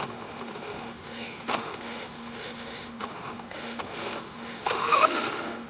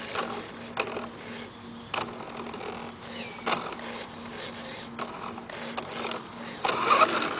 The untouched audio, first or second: second